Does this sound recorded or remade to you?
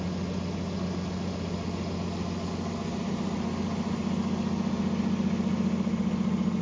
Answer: recorded